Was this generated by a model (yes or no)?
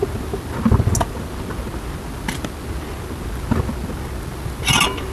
no